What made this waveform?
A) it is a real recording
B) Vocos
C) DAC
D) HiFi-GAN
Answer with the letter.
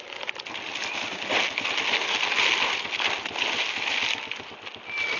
A